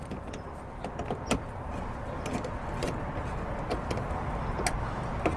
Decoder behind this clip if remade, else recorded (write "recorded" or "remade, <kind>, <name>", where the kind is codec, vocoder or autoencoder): recorded